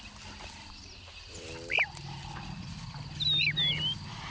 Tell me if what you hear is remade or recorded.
recorded